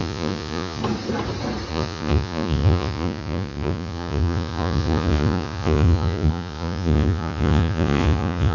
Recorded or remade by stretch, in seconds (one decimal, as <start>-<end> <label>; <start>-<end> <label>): 0.0-0.8 remade; 0.8-1.7 recorded; 1.7-8.5 remade